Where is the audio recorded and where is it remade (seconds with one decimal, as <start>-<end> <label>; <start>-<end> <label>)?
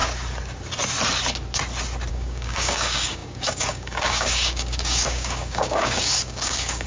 0.0-2.1 recorded; 2.1-6.9 remade